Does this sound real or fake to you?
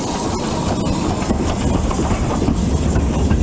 real